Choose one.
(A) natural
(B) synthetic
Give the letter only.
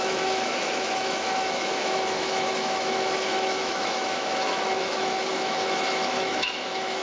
B